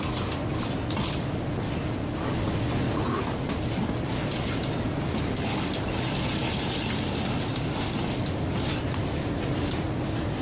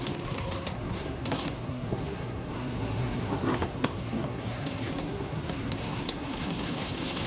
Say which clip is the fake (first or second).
second